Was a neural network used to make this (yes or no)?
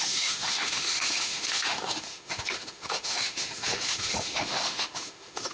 yes